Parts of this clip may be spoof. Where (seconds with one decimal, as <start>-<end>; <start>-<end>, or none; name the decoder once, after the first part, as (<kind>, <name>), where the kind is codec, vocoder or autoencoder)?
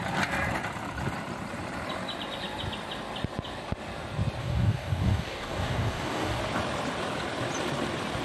4.4-6.4 (codec, DAC)